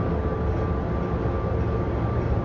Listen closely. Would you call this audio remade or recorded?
recorded